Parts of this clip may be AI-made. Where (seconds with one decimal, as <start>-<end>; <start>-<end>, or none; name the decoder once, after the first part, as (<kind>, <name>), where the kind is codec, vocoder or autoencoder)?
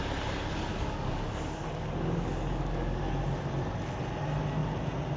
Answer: 0.7-3.0 (codec, DAC)